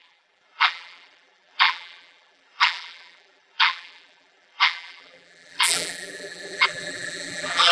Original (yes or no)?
no